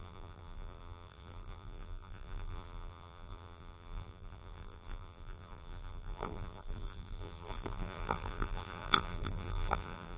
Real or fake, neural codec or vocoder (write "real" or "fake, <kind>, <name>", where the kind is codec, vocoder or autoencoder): fake, vocoder, BigVGAN v2